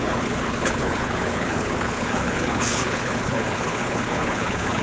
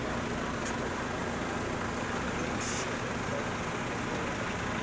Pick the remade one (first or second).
first